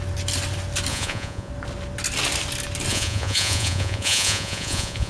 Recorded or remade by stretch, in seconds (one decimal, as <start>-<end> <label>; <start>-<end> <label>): 0.0-0.9 recorded; 0.9-1.5 remade; 1.5-2.9 recorded; 2.9-5.1 remade